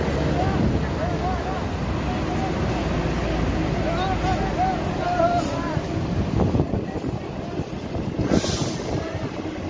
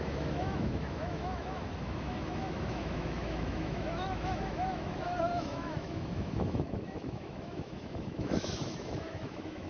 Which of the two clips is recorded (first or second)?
first